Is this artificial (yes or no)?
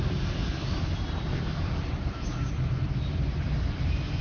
no